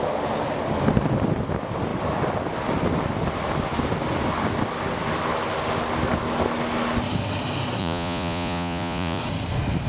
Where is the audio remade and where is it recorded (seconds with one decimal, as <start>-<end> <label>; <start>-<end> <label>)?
0.0-7.8 recorded; 7.8-9.2 remade; 9.2-9.9 recorded